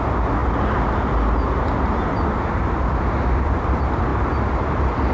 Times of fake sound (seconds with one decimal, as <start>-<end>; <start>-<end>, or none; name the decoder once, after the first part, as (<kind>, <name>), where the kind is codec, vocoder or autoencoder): none

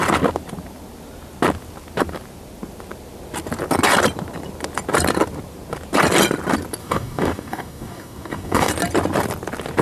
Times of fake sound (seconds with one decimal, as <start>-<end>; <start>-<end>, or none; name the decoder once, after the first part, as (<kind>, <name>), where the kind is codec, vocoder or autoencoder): 6.8-8.7 (codec, DAC)

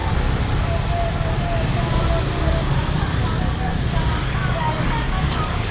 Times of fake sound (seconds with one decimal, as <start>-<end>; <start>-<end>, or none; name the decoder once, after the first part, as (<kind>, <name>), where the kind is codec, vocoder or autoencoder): 2.6-3.7 (codec, DAC); 4.2-5.7

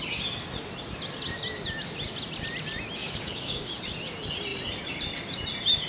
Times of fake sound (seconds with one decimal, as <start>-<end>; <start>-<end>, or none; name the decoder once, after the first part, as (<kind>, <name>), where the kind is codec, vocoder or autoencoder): 3.0-3.7 (codec, DAC)